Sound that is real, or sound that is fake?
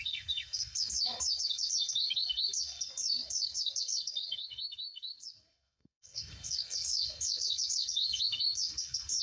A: fake